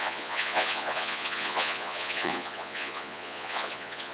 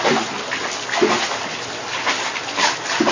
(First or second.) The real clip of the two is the second